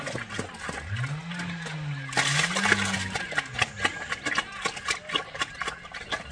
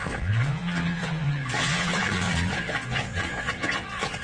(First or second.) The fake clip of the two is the second